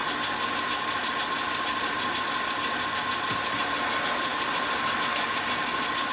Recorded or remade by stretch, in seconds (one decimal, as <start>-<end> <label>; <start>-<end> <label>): 0.0-6.1 recorded